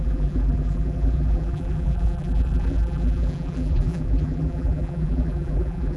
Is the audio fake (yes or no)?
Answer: yes